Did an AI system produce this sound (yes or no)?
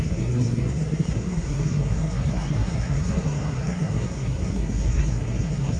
yes